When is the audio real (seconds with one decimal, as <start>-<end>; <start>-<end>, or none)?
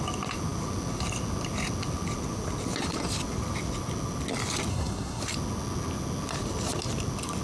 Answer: 0.0-4.7; 5.2-7.4